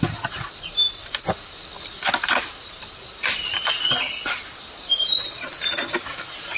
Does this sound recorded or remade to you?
remade